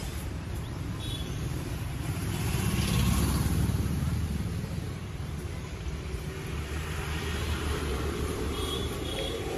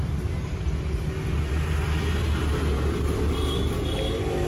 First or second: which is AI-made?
first